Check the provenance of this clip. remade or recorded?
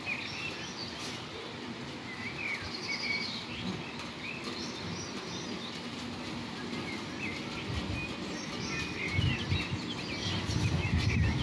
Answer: recorded